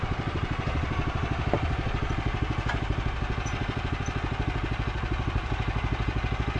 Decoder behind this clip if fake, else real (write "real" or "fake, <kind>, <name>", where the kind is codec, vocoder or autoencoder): real